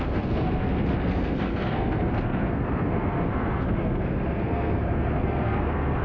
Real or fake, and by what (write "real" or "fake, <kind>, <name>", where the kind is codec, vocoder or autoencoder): fake, codec, SNAC